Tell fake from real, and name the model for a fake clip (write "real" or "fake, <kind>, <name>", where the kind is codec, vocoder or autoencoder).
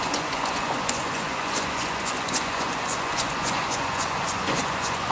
fake, vocoder, Vocos